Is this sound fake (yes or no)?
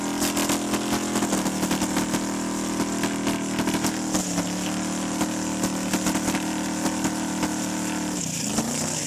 no